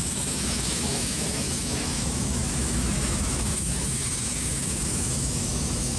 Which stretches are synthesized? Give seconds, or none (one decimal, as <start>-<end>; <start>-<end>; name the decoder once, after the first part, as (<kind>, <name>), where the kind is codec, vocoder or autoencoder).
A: 0.0-6.0 (autoencoder, DAC-VAE)

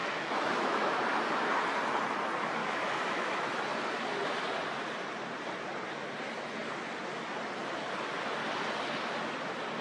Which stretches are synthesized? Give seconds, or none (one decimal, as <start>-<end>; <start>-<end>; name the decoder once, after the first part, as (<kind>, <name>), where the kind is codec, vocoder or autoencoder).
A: 0.0-1.0 (autoencoder, DAC-VAE); 2.6-3.4

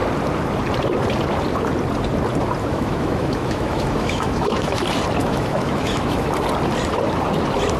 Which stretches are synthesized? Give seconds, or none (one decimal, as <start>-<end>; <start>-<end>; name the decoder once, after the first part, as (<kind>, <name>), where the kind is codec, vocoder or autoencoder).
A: 2.6-4.8 (autoencoder, DAC-VAE); 5.2-6.3

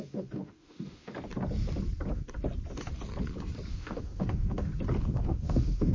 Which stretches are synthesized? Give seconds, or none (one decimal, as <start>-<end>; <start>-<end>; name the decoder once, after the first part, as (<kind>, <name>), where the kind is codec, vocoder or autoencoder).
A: 0.0-1.1 (autoencoder, DAC-VAE); 3.7-4.7; 5.2-5.9

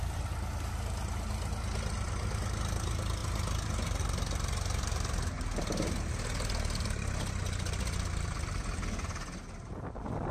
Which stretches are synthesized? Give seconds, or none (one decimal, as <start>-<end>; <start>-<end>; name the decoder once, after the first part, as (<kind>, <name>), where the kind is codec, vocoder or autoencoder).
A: none

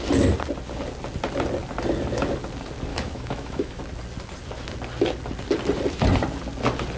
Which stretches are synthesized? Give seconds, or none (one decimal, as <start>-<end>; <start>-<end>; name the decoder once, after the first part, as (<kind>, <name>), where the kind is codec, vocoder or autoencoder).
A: 2.9-3.8 (autoencoder, DAC-VAE)